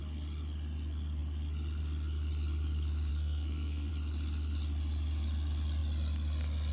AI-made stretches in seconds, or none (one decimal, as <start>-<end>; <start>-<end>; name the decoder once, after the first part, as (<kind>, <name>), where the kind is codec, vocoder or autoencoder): 3.1-3.9 (codec, SNAC)